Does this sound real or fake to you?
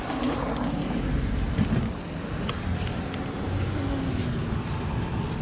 real